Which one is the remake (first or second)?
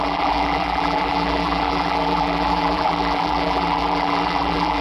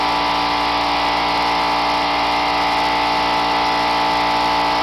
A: first